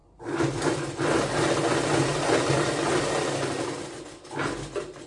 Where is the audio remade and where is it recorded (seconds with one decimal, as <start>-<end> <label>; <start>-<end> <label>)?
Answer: 0.0-5.1 recorded